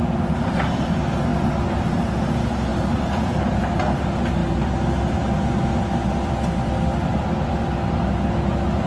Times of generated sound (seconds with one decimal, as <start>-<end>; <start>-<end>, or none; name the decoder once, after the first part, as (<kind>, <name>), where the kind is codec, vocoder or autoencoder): none